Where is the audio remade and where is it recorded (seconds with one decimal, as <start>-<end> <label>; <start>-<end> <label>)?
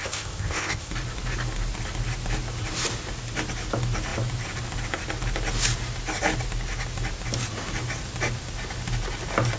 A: 0.0-0.9 remade; 0.9-9.6 recorded